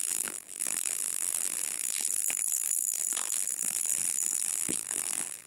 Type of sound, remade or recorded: remade